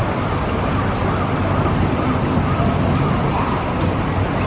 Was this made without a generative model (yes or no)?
yes